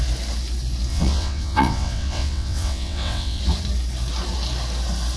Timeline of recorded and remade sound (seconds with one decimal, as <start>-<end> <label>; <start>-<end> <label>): 0.0-0.9 recorded; 0.9-3.4 remade; 3.4-5.2 recorded